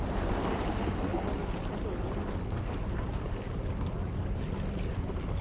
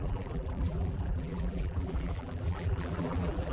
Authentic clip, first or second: first